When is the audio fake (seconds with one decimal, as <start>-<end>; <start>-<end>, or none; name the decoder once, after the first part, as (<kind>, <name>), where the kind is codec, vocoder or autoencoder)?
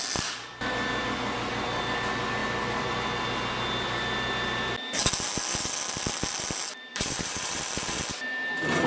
2.4-2.9 (vocoder, BigVGAN v2); 6.9-8.0